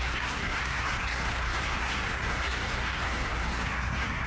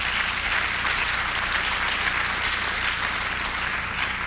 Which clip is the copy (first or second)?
first